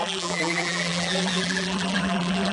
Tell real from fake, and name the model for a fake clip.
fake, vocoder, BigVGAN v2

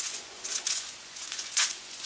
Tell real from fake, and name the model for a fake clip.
fake, vocoder, Vocos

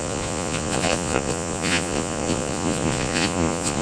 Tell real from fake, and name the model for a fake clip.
fake, vocoder, Vocos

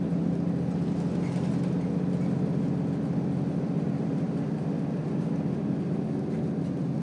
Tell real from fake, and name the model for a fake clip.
real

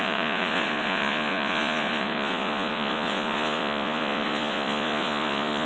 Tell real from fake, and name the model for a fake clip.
fake, vocoder, Vocos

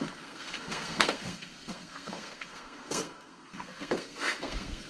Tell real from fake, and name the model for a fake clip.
fake, codec, SNAC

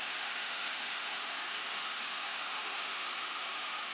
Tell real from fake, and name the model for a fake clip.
fake, autoencoder, DAC-VAE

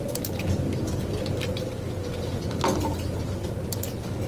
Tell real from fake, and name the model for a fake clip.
real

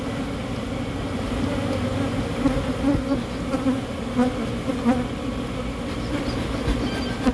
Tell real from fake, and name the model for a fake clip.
real